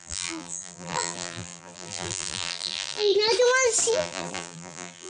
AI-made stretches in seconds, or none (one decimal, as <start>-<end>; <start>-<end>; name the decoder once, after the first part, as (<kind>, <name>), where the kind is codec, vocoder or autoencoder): 0.0-3.1 (vocoder, BigVGAN v2); 3.9-5.1